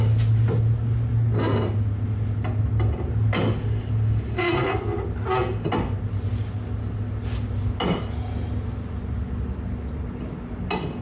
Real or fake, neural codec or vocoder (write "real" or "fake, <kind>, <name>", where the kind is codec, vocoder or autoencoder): real